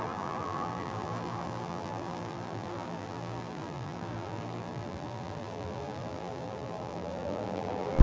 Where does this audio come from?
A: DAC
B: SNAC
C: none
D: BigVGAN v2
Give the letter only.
D